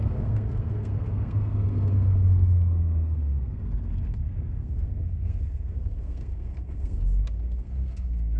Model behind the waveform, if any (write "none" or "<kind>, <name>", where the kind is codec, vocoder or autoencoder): codec, SNAC